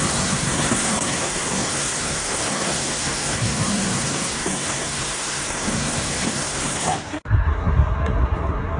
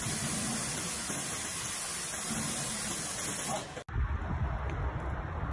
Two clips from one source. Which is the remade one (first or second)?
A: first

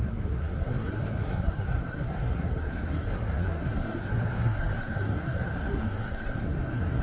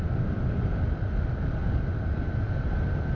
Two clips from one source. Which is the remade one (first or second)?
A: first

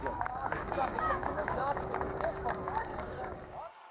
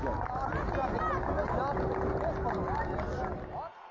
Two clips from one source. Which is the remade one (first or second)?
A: first